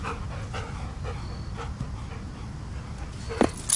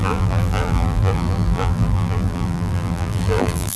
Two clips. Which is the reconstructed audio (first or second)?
second